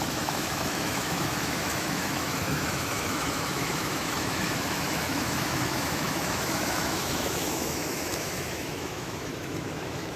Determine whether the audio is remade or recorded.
remade